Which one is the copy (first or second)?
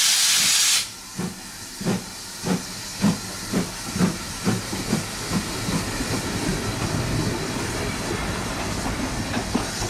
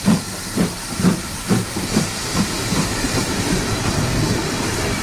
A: second